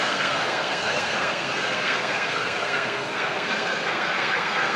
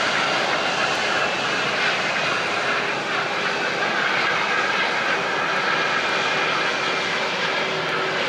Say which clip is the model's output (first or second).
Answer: first